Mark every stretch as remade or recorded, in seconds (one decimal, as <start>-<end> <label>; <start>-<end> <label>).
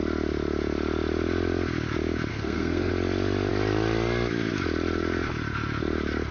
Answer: 0.0-2.3 recorded; 2.3-2.9 remade; 2.9-6.3 recorded